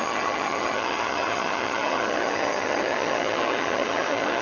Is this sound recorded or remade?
remade